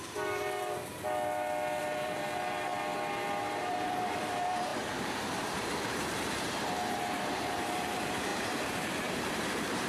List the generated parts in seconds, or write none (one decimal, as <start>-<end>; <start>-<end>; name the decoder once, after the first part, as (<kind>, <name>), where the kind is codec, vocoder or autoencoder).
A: 0.0-0.9 (vocoder, BigVGAN v2); 1.8-2.7; 3.5-9.9